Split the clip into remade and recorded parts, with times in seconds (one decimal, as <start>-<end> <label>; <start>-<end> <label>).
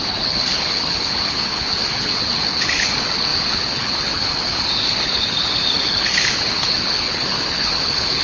0.0-8.2 remade